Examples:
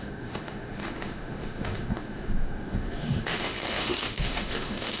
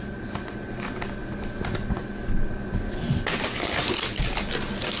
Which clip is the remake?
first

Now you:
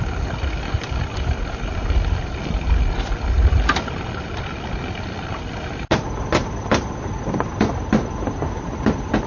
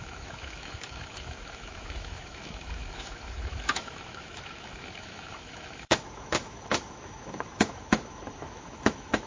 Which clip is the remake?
second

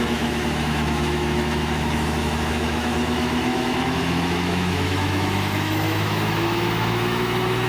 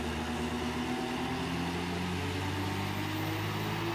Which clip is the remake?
first